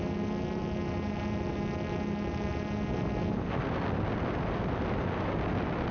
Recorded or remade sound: recorded